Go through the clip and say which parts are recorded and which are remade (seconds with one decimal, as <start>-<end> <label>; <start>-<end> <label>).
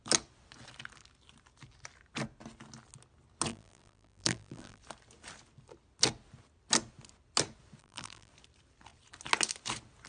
0.0-3.5 recorded; 3.5-4.8 remade; 4.8-7.8 recorded; 7.8-8.3 remade; 8.3-10.1 recorded